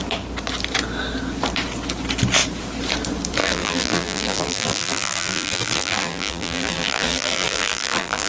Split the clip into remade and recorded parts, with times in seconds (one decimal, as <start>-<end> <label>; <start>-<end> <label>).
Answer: 0.0-3.4 recorded; 3.4-8.3 remade